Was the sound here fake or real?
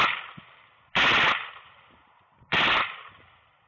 real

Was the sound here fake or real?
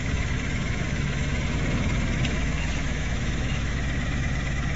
fake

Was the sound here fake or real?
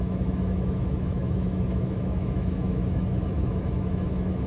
fake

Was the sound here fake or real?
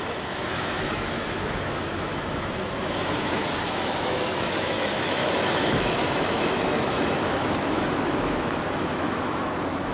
fake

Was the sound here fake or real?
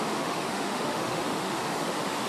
fake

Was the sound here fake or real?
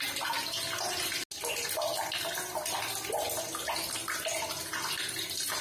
real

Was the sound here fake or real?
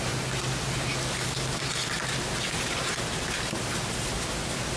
real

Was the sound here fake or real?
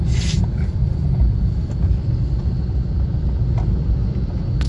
real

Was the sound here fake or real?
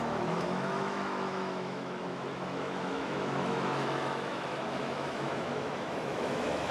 fake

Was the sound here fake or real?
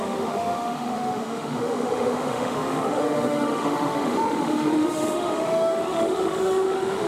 fake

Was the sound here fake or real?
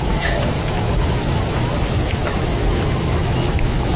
fake